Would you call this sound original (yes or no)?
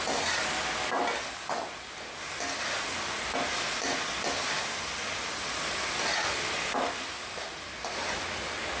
yes